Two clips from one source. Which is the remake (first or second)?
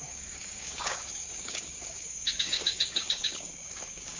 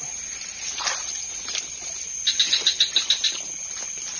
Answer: first